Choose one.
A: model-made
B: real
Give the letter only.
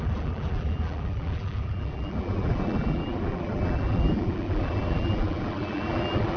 A